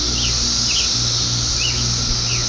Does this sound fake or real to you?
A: real